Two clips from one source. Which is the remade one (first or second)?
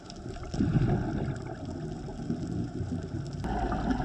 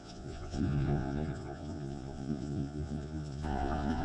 second